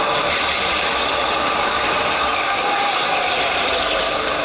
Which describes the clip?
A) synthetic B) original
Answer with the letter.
B